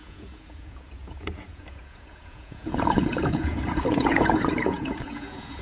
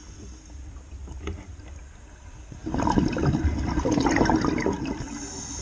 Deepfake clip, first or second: first